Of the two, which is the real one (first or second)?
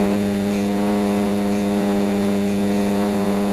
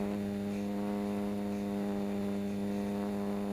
second